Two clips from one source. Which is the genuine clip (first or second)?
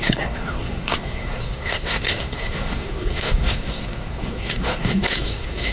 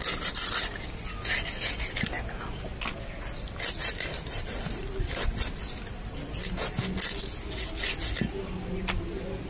second